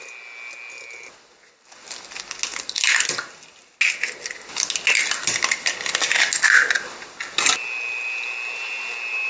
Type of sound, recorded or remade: recorded